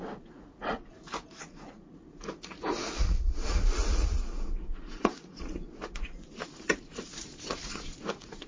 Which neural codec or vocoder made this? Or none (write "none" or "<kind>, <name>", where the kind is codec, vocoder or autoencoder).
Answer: vocoder, Vocos